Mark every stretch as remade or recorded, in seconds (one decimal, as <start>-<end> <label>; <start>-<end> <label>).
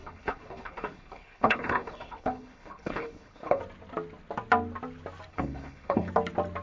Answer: 0.0-3.6 remade; 3.6-5.3 recorded; 5.3-6.1 remade; 6.1-6.6 recorded